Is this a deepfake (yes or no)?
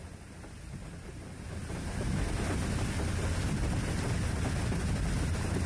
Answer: no